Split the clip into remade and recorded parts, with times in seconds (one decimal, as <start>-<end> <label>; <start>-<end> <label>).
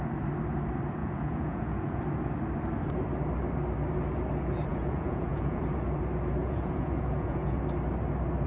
0.0-1.0 recorded; 1.0-2.0 remade; 2.0-4.7 recorded; 4.7-5.6 remade; 5.6-6.4 recorded; 6.4-7.6 remade; 7.6-8.5 recorded